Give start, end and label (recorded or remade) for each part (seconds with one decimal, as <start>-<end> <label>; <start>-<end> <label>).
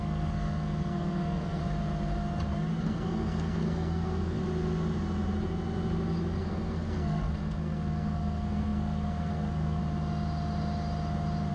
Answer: 0.0-1.6 remade; 1.6-2.8 recorded; 2.8-4.4 remade; 4.4-6.4 recorded; 6.4-9.8 remade; 9.8-11.5 recorded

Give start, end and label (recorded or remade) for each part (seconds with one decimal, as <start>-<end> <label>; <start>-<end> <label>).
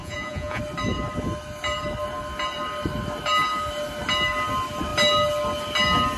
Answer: 0.0-0.6 remade; 0.6-6.2 recorded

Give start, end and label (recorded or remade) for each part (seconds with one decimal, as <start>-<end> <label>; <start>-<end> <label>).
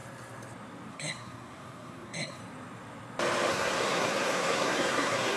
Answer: 0.0-0.9 recorded; 0.9-2.4 remade; 2.4-3.5 recorded; 3.5-5.4 remade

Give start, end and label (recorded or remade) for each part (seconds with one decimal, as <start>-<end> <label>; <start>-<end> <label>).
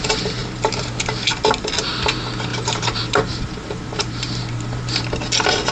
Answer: 0.0-0.4 recorded; 0.4-0.9 remade; 0.9-2.5 recorded; 2.5-5.0 remade; 5.0-5.7 recorded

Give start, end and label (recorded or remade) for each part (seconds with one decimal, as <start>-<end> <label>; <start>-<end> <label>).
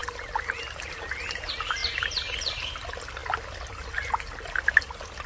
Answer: 0.0-5.3 recorded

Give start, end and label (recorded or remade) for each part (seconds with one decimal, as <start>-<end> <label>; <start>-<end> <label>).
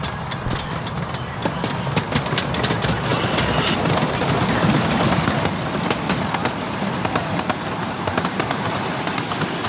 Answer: 0.0-9.7 recorded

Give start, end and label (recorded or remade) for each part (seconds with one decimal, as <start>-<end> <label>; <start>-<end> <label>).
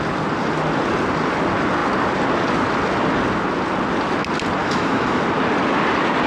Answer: 0.0-4.6 recorded; 4.6-5.2 remade; 5.2-6.3 recorded